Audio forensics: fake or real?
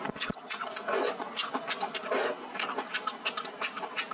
real